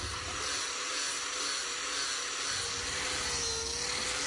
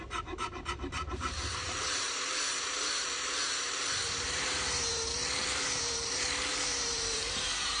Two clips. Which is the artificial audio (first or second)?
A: second